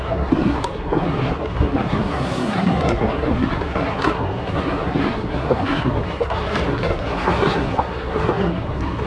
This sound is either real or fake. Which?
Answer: fake